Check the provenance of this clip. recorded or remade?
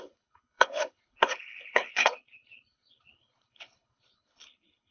remade